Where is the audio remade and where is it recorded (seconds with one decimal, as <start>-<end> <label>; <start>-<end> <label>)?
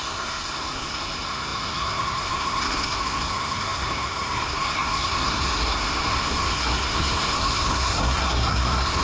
0.0-9.0 remade